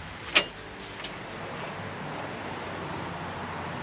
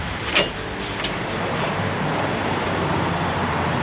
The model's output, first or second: second